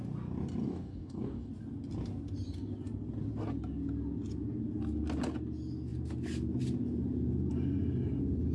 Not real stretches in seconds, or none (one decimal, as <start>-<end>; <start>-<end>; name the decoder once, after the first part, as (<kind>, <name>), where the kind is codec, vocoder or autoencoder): 0.6-1.5 (codec, DAC)